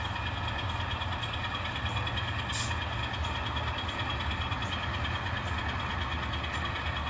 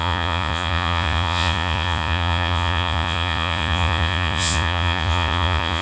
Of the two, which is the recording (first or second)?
first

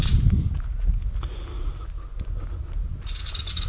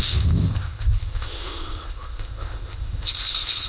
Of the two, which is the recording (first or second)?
first